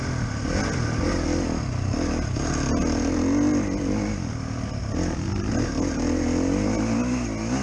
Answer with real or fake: real